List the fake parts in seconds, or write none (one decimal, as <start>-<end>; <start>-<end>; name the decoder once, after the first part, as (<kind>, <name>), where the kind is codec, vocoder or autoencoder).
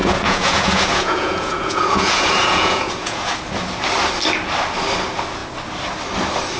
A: 0.0-3.3 (vocoder, Vocos)